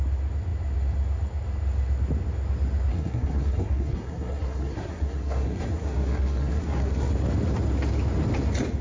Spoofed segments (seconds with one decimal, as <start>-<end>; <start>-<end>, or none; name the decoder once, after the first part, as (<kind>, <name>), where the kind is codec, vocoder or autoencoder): 2.9-7.1 (codec, SNAC)